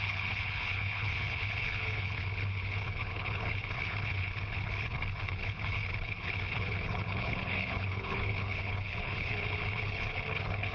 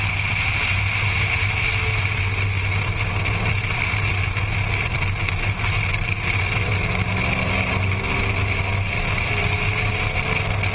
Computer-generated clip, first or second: first